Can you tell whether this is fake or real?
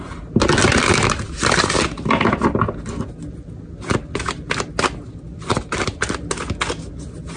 real